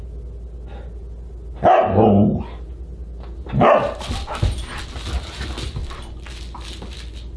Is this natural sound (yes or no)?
yes